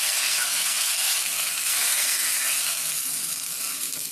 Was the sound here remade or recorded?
remade